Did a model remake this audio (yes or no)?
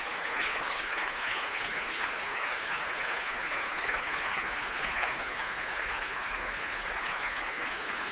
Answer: yes